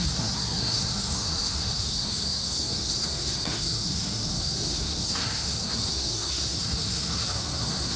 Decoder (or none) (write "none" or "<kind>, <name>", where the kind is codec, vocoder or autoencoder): codec, SNAC